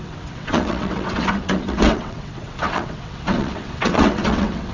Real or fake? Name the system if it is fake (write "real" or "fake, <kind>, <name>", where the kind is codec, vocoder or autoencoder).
fake, vocoder, WaveNeXt